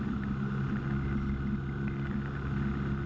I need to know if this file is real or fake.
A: real